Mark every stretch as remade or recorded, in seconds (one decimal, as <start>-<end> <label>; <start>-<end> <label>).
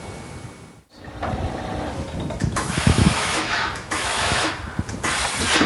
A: 0.0-2.4 recorded; 2.4-4.5 remade; 4.5-5.7 recorded